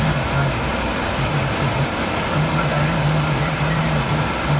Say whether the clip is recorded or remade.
recorded